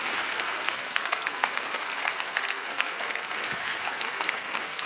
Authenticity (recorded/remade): remade